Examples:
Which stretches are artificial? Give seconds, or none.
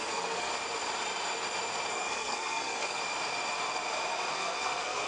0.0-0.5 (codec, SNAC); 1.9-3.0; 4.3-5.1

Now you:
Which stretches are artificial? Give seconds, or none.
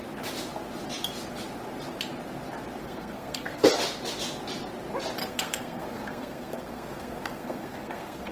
2.8-3.7 (codec, SNAC); 5.2-8.3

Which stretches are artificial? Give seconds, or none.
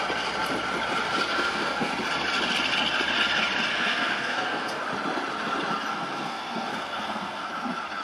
1.3-1.9 (codec, SNAC); 3.7-4.8; 5.9-7.5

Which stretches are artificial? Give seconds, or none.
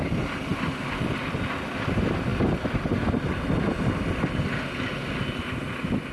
none